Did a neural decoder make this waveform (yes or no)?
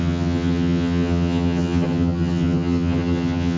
yes